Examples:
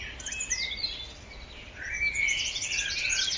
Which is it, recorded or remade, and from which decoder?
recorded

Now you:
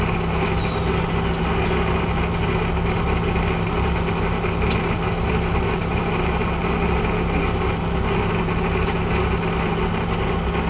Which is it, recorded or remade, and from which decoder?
recorded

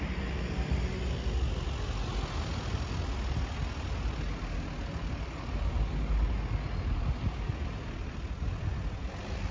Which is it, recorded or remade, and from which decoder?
recorded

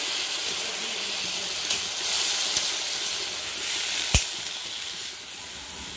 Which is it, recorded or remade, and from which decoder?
recorded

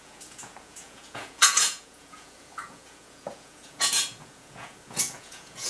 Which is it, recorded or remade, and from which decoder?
remade, vocoder, Vocos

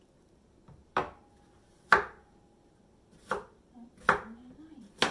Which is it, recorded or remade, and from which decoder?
recorded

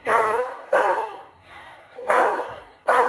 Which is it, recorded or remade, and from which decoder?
remade, codec, SNAC